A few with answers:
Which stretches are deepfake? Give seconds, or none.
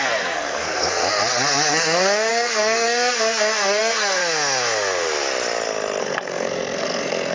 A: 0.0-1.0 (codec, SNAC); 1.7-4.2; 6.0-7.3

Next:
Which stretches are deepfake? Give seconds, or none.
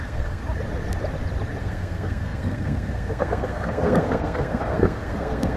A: 0.0-0.4 (codec, SNAC); 1.6-5.6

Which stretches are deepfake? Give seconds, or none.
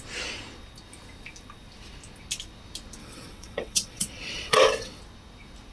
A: 3.0-5.0 (vocoder, WaveNeXt)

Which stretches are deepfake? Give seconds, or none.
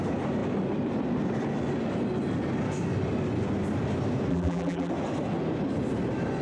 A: 4.3-4.9 (vocoder, BigVGAN v2)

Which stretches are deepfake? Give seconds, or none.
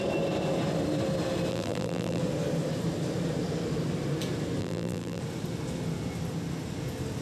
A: 1.5-2.2 (vocoder, BigVGAN v2); 4.6-5.2